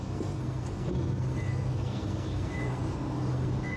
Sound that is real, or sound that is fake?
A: fake